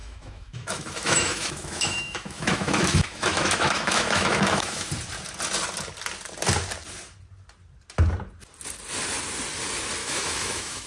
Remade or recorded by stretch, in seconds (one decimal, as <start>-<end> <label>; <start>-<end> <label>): 0.0-4.9 remade; 4.9-10.0 recorded; 10.0-10.9 remade